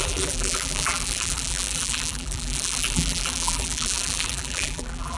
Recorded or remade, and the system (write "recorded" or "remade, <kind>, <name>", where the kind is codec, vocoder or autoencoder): remade, vocoder, BigVGAN v2